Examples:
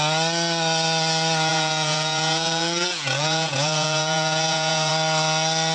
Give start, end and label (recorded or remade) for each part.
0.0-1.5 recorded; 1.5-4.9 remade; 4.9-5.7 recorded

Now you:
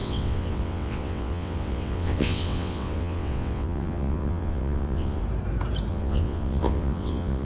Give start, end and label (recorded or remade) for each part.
0.0-5.2 remade; 5.2-5.9 recorded; 5.9-7.4 remade